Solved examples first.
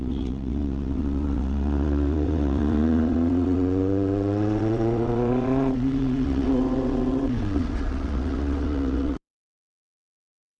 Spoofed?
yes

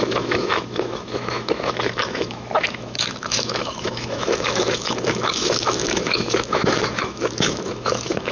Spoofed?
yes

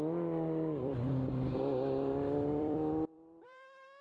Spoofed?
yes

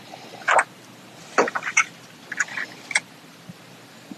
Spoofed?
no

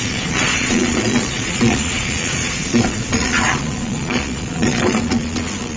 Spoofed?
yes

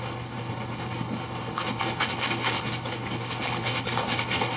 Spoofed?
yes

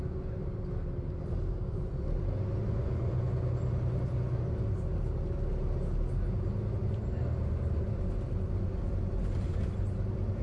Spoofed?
no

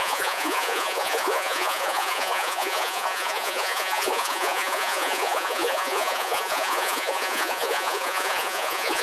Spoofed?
yes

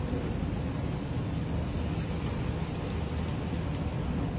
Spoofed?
no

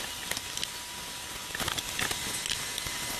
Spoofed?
no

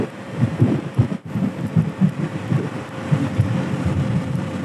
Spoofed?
yes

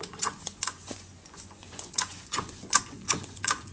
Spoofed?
yes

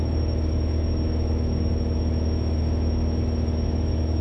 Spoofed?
yes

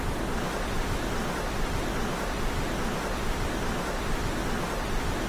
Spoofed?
no